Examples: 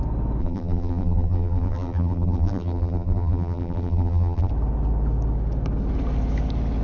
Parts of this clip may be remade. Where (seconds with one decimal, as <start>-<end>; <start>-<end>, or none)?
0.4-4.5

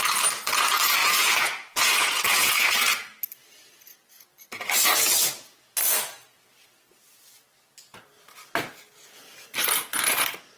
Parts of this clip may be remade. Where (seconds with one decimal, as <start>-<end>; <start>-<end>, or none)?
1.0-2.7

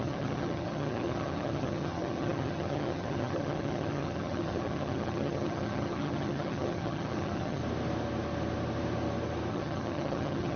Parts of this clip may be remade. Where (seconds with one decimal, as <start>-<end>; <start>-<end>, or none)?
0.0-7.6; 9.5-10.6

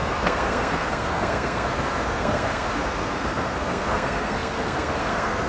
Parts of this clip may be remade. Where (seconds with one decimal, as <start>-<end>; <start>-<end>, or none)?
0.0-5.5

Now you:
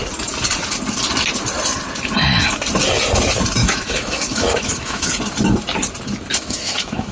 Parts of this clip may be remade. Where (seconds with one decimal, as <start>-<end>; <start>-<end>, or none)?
3.6-5.1; 6.3-7.1

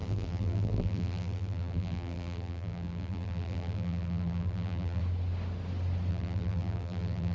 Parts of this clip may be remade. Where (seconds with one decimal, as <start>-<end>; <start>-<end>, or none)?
0.0-5.0; 6.1-7.3

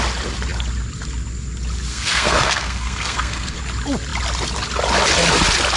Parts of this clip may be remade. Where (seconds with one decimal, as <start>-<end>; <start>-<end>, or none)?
1.9-3.6

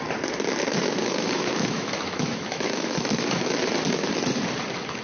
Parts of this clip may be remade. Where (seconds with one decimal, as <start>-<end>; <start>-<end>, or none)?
0.6-3.6